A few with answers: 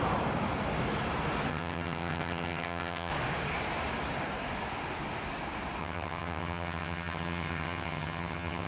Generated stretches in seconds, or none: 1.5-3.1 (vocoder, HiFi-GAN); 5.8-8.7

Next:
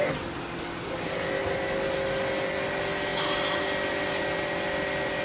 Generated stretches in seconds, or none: none